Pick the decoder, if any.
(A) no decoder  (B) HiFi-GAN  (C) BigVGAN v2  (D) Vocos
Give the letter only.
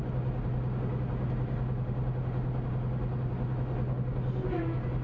A